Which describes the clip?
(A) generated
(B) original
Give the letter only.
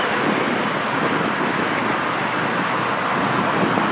B